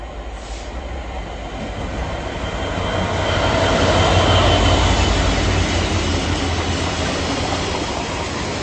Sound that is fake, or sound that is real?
real